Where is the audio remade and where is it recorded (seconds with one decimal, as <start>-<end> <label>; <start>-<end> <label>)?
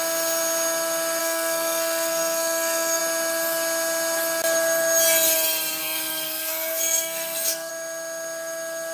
0.0-1.2 recorded; 1.2-3.0 remade; 3.0-5.8 recorded; 5.8-7.7 remade; 7.7-8.9 recorded